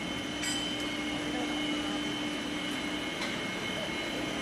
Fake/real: real